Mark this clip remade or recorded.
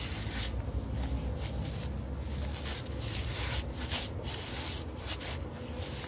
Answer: recorded